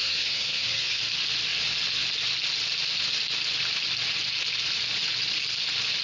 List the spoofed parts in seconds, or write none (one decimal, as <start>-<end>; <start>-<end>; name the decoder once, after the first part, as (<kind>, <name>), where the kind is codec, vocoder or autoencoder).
0.0-1.0 (codec, SNAC)